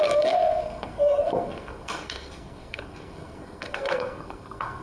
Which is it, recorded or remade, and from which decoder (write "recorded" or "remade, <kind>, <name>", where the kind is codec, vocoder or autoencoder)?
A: remade, codec, SNAC